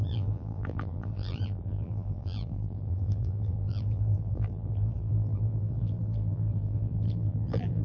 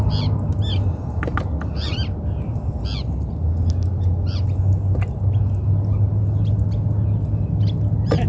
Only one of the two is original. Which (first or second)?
second